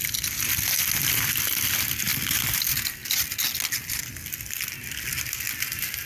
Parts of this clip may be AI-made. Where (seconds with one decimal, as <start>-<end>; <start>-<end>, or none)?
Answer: 2.1-3.3